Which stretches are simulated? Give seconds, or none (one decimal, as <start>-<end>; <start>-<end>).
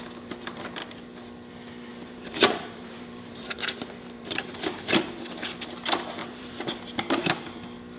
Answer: 1.9-5.0; 6.2-6.7